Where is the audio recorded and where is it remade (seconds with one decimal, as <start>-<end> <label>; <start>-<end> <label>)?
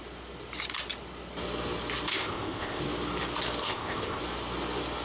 0.0-2.1 recorded; 2.1-2.8 remade; 2.8-3.6 recorded; 3.6-4.2 remade; 4.2-5.0 recorded